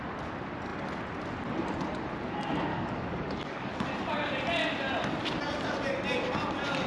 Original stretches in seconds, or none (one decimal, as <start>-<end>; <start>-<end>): 0.0-2.7; 3.7-6.9